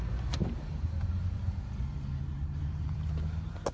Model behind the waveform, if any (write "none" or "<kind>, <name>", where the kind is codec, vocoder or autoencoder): none